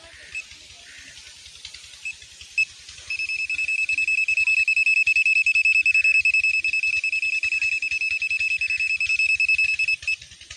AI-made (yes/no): no